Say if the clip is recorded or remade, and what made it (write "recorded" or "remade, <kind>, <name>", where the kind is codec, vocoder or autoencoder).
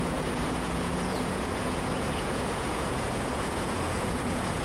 remade, vocoder, Vocos